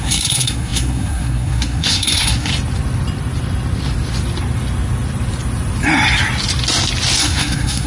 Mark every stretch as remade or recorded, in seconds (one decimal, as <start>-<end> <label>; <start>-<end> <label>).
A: 0.0-2.5 remade; 2.5-7.2 recorded; 7.2-7.9 remade